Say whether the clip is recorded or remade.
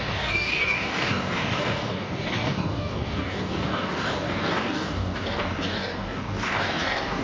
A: remade